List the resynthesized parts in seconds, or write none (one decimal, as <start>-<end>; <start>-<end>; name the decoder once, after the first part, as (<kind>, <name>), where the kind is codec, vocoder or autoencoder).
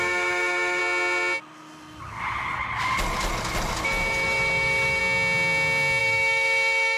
0.0-0.8 (autoencoder, DAC-VAE); 3.8-5.0; 6.0-7.0